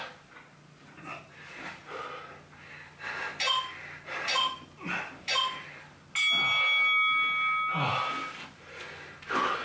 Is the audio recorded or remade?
recorded